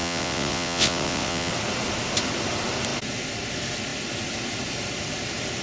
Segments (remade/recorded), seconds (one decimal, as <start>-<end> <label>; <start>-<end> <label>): 0.0-1.5 remade; 1.5-5.6 recorded